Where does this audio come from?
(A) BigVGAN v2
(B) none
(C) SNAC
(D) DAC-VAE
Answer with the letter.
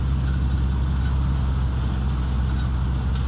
B